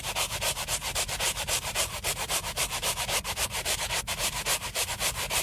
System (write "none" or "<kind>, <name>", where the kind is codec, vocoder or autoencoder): vocoder, BigVGAN v2